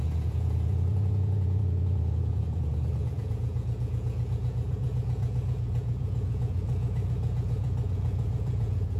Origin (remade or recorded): remade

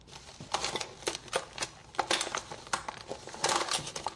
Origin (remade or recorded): recorded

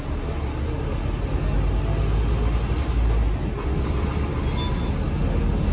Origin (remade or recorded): recorded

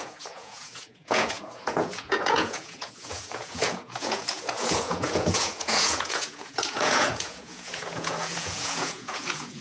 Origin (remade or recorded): remade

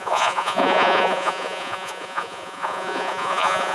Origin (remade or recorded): remade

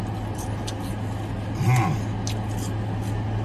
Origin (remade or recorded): recorded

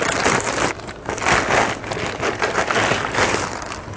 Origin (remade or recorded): recorded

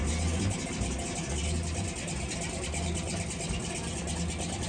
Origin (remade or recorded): recorded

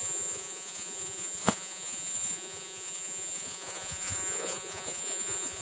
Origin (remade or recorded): remade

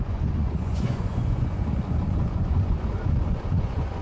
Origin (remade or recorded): remade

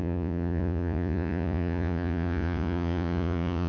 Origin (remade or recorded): remade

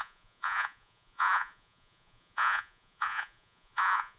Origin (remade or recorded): remade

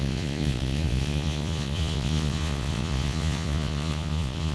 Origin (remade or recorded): remade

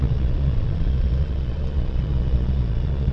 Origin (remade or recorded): remade